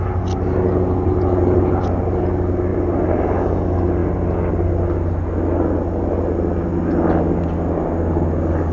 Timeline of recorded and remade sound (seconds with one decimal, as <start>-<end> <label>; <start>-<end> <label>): 0.0-8.7 recorded